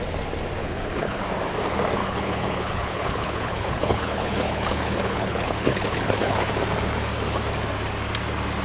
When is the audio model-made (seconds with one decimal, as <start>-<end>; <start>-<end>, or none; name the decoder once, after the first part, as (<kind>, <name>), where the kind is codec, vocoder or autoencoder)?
0.6-1.2 (codec, HILCodec); 2.0-6.5